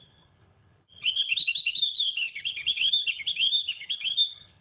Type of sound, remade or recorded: remade